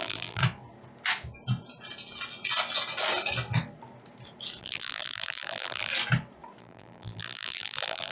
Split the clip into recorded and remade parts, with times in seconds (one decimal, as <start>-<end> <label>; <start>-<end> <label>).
0.0-0.4 remade; 0.4-4.6 recorded; 4.6-5.9 remade; 5.9-6.6 recorded; 6.6-8.1 remade